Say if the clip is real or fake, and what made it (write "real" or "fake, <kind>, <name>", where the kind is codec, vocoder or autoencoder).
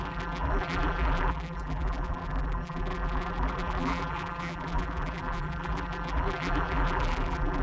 fake, vocoder, BigVGAN v2